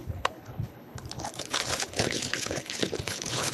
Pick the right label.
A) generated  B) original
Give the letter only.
A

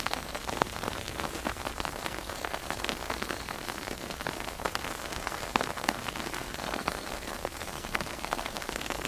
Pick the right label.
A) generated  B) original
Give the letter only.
A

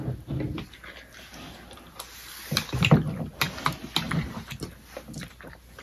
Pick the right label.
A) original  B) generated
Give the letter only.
A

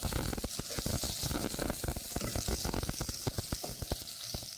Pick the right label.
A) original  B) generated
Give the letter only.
A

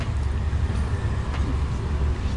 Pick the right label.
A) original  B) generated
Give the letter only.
A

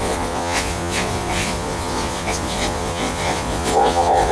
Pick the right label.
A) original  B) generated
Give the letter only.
B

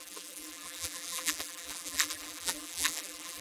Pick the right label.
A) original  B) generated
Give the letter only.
B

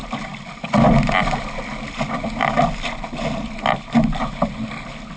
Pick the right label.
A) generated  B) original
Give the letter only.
B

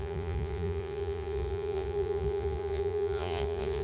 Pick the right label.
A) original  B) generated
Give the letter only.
B